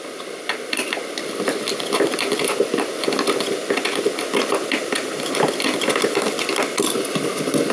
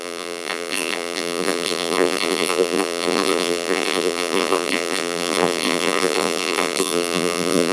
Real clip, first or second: first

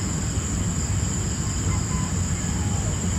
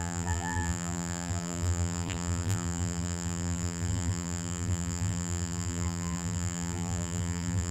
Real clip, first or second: first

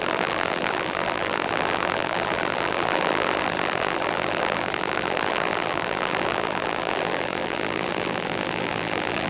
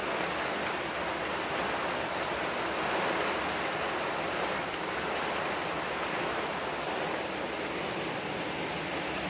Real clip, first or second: second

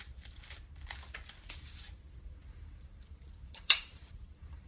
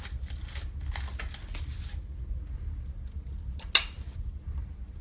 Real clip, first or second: second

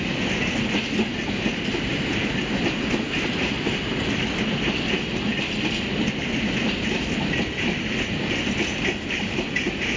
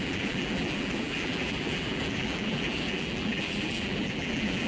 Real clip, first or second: first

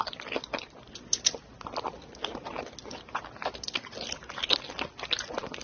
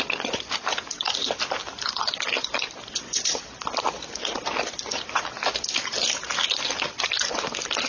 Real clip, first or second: first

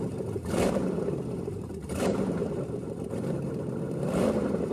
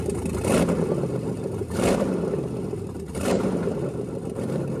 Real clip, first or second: second